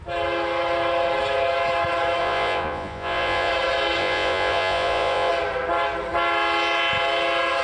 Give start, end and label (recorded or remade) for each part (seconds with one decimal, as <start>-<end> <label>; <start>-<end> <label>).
0.0-2.2 recorded; 2.2-3.5 remade; 3.5-4.0 recorded; 4.0-5.3 remade; 5.3-7.6 recorded